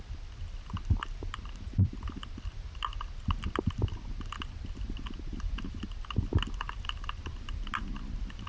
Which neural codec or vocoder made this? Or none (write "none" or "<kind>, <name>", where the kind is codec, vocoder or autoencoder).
none